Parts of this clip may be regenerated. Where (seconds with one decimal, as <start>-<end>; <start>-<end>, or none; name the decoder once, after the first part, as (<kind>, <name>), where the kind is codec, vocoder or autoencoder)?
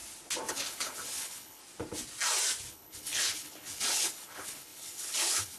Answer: 0.5-1.6 (codec, HILCodec); 2.7-5.6